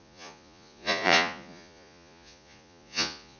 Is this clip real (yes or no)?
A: no